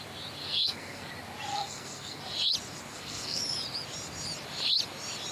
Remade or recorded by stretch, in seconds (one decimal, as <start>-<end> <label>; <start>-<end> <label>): 0.0-0.4 recorded; 0.4-1.1 remade; 1.1-1.5 recorded; 1.5-2.2 remade; 2.2-2.9 recorded; 2.9-3.4 remade; 3.4-5.3 recorded